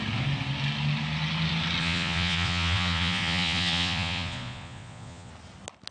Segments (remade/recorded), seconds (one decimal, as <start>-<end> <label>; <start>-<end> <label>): 0.0-1.8 recorded; 1.8-5.3 remade; 5.3-5.9 recorded